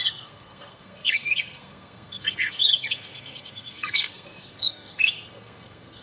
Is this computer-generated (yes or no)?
yes